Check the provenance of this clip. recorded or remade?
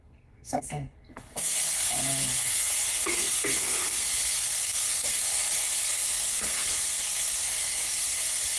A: remade